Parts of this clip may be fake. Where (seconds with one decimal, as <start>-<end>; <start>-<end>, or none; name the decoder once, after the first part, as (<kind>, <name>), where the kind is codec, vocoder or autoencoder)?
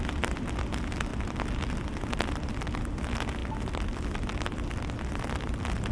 none